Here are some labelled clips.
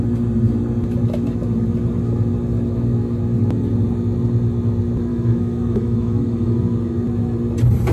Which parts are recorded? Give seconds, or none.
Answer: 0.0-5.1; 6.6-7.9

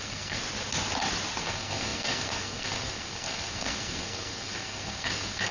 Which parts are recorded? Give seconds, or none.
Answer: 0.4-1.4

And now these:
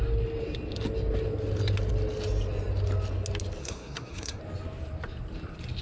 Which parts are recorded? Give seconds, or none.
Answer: 0.0-3.6; 4.4-5.8

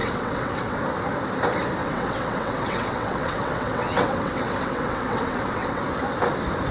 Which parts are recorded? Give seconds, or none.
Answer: 0.8-1.8; 5.8-6.7

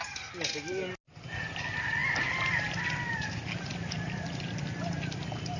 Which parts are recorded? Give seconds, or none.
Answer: 0.0-5.6

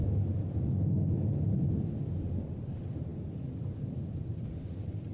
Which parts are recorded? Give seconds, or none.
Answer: 0.0-5.1

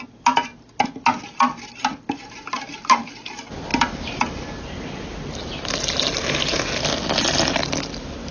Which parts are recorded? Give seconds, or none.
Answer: 0.0-8.3

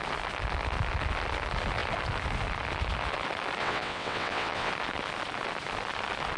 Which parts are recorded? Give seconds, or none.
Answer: 0.0-3.6; 4.7-6.4